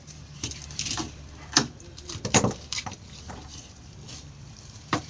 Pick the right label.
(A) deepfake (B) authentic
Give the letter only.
A